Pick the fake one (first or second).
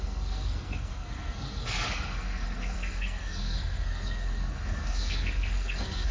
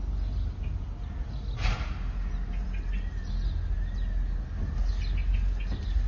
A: first